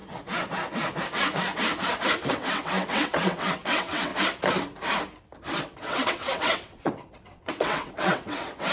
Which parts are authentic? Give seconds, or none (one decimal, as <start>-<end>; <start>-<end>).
0.0-2.3; 4.1-5.6